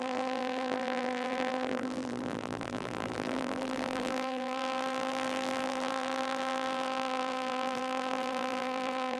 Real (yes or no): no